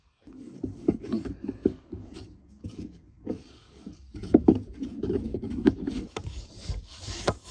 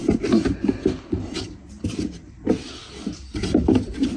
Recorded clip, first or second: second